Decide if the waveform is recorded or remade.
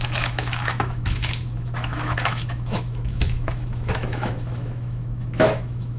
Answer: remade